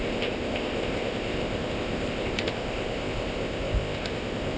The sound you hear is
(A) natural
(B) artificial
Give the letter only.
B